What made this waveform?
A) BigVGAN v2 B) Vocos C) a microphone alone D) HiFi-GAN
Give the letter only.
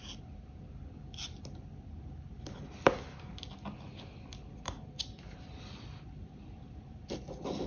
C